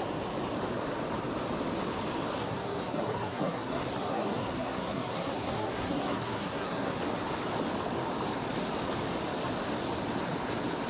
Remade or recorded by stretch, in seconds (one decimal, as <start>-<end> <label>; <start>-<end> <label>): 0.0-2.4 recorded; 2.4-7.0 remade; 7.0-10.9 recorded